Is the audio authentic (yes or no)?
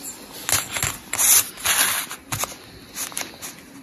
yes